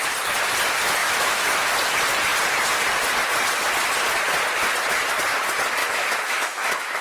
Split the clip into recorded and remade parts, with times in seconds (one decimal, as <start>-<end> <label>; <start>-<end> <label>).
0.0-1.0 recorded; 1.0-1.7 remade; 1.7-5.8 recorded; 5.8-7.0 remade